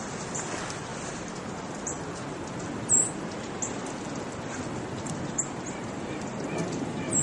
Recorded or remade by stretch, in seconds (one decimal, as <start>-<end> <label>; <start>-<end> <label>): 0.0-7.2 recorded